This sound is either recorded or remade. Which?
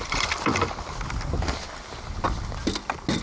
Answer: recorded